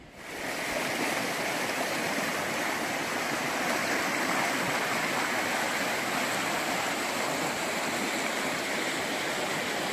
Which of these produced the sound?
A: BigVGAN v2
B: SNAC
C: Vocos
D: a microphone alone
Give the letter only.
D